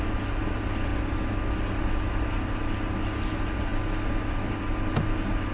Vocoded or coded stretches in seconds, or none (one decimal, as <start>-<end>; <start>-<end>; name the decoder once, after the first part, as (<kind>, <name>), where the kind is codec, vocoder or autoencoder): none

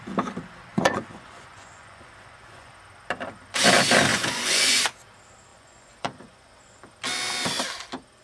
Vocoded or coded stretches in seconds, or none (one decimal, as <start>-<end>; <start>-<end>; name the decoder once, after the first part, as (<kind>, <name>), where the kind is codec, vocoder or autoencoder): 0.7-2.7 (vocoder, Vocos); 4.1-4.8; 5.5-6.8

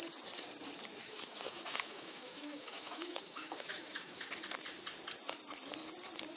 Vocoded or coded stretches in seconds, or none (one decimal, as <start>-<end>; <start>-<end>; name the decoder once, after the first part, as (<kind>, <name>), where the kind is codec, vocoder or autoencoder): 1.0-4.3 (autoencoder, DAC-VAE)

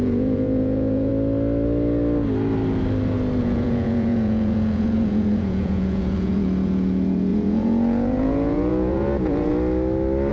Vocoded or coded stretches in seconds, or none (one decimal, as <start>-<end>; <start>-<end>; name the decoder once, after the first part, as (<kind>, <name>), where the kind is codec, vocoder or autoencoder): 0.0-1.1 (vocoder, Vocos); 3.4-9.5

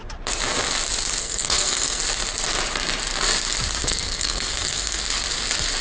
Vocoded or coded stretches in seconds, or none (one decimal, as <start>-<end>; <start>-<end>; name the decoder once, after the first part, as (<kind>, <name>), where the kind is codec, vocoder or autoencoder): 1.2-2.0 (codec, SNAC); 3.8-5.0

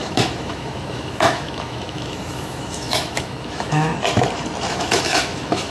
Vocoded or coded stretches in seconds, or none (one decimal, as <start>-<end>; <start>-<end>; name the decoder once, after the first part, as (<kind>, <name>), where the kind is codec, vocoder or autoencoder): 0.0-3.9 (autoencoder, DAC-VAE); 4.7-5.7